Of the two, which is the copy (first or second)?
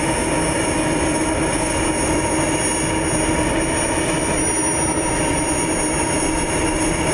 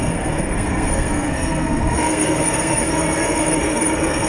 second